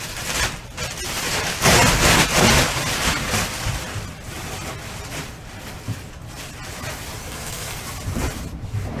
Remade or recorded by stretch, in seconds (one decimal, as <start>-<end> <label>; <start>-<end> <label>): 0.0-7.2 recorded; 7.2-7.8 remade; 7.8-9.0 recorded